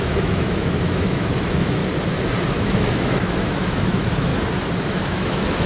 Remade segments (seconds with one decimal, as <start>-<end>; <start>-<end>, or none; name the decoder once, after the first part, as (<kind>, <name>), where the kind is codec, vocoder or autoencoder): 0.0-1.8 (autoencoder, DAC-VAE); 2.5-4.3; 4.9-5.7